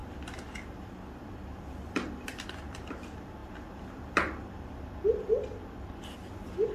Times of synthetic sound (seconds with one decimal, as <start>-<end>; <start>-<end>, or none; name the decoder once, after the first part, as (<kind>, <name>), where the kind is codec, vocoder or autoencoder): none

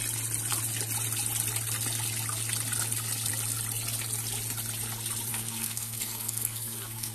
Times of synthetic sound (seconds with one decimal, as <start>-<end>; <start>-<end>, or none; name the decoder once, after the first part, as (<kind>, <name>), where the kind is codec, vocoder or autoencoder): 5.3-7.1 (codec, SNAC)

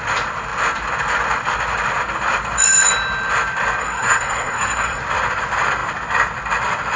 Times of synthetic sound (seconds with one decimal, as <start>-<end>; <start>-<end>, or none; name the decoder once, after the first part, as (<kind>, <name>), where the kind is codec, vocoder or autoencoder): 3.8-5.0 (codec, SNAC)

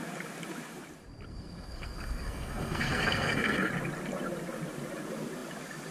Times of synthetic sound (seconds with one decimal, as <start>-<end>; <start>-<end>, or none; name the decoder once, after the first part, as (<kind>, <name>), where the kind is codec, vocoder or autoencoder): 1.3-3.7 (codec, SNAC)

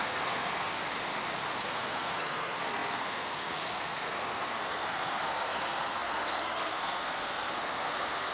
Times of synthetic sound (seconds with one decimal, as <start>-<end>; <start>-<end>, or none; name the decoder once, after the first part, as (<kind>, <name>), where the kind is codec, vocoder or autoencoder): 0.0-0.8 (codec, SNAC); 1.6-8.3

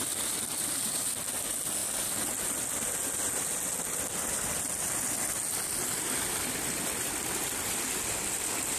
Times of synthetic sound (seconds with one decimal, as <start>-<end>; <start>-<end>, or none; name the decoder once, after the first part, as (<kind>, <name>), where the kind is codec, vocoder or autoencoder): none

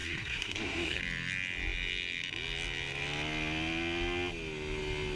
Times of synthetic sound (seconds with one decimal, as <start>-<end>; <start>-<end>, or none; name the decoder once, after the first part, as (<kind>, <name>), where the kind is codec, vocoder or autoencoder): 0.0-1.0 (codec, SNAC)

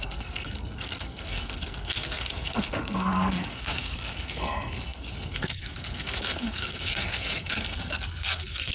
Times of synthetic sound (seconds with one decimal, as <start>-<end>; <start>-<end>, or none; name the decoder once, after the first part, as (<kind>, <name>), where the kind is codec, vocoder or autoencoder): 0.0-8.7 (codec, SNAC)